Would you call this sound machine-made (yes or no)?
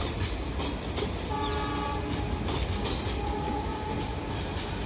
no